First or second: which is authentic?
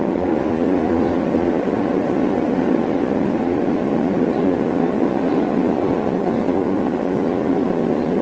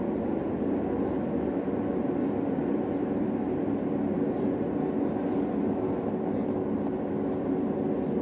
second